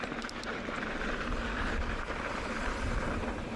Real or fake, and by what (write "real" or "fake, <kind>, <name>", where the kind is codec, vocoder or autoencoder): fake, vocoder, BigVGAN v2